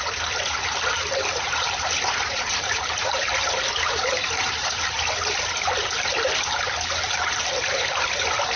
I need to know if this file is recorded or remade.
recorded